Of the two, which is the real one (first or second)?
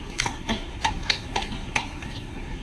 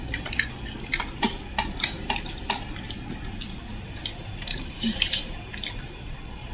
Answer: second